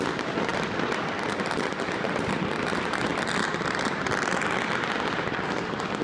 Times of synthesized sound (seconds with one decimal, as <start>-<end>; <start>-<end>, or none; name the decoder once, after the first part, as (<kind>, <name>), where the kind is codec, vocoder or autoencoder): 0.5-1.3 (vocoder, BigVGAN v2); 3.1-4.9